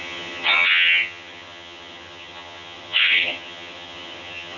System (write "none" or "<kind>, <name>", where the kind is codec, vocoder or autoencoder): vocoder, HiFi-GAN